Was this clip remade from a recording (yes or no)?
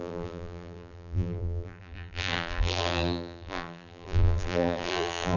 yes